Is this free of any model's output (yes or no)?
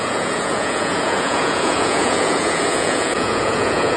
no